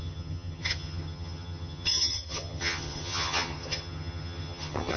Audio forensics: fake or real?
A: fake